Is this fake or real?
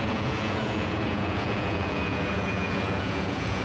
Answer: fake